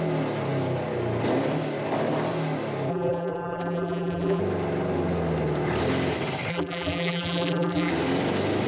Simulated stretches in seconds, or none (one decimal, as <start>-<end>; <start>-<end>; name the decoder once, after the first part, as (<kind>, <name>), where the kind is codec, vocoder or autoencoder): 2.9-4.4 (vocoder, BigVGAN v2); 6.5-7.9